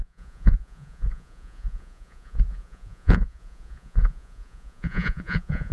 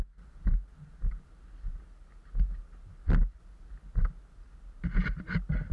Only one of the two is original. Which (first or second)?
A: second